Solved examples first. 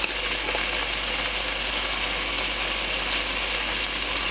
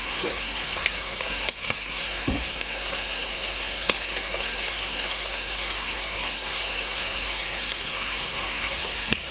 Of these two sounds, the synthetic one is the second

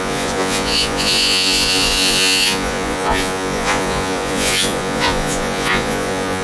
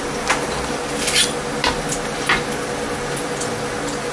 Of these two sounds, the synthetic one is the first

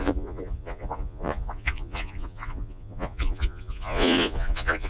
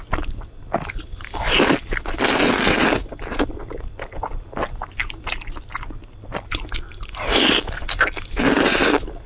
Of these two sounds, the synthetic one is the first